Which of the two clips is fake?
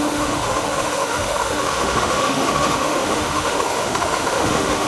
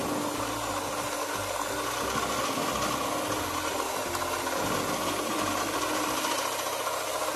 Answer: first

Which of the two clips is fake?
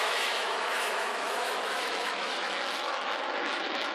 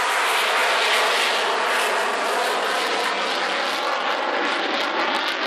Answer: first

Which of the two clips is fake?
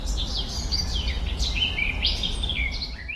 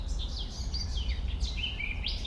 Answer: second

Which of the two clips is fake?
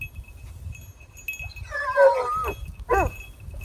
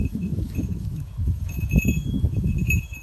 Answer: second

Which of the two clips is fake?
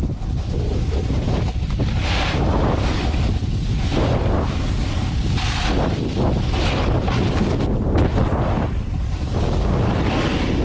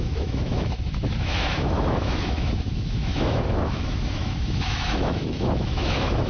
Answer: second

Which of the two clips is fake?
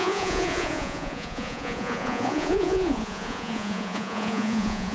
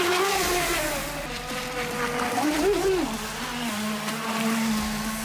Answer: first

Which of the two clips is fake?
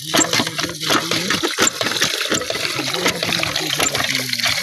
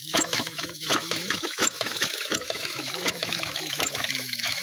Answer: second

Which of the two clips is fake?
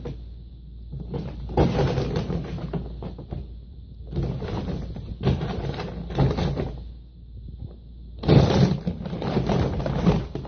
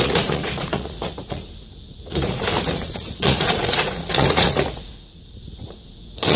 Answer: second